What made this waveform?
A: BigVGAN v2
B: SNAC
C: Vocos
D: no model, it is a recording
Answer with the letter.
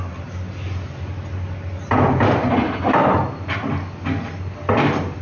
D